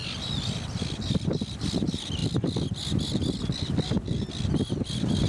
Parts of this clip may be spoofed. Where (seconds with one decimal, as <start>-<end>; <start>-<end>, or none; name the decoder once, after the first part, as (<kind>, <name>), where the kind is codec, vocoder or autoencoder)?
1.1-5.3 (vocoder, BigVGAN v2)